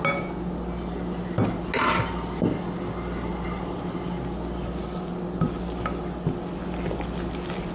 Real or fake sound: real